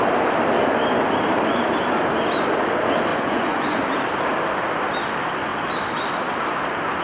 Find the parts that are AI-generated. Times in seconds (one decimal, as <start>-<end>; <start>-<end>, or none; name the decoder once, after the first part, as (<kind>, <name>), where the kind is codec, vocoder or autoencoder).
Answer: 3.1-3.8 (vocoder, Vocos)